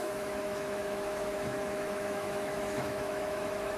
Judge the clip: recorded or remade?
remade